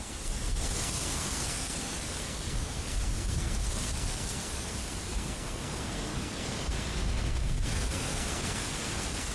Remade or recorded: remade